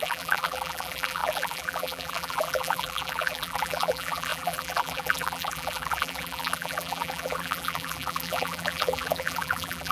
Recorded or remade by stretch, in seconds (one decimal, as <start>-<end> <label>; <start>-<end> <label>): 0.0-9.9 remade